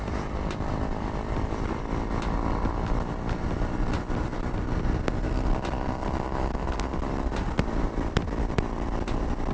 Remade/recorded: recorded